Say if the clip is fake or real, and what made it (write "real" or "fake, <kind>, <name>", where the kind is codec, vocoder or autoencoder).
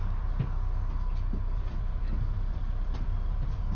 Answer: fake, vocoder, BigVGAN v2